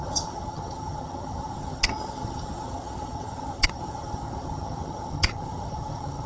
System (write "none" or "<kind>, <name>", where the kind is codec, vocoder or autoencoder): vocoder, HiFi-GAN